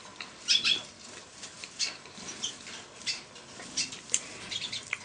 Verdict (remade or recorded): remade